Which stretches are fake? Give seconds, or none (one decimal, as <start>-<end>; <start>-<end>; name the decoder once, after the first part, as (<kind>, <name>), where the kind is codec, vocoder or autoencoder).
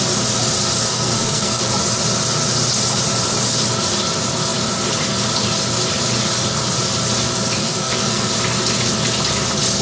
0.9-1.6 (codec, SNAC); 7.6-8.3